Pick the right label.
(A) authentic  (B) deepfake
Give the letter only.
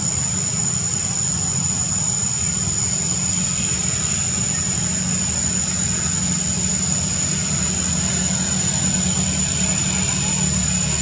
A